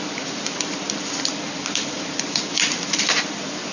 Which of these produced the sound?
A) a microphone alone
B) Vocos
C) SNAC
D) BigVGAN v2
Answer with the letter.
D